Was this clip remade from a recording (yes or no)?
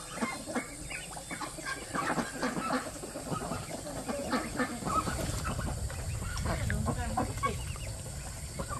no